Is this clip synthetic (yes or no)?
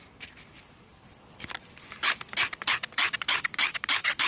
yes